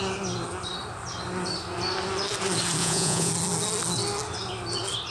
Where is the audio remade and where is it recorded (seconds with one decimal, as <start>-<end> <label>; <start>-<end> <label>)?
0.0-2.8 recorded; 2.8-3.3 remade; 3.3-5.1 recorded